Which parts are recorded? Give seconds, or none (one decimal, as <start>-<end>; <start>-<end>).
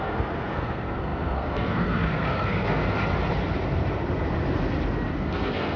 2.8-5.1